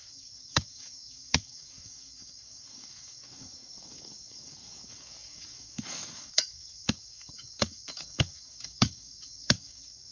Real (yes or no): no